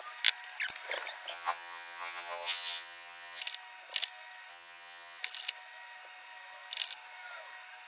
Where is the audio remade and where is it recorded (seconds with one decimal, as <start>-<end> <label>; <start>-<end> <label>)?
0.0-1.3 recorded; 1.3-3.4 remade; 3.4-4.5 recorded; 4.5-5.2 remade; 5.2-7.9 recorded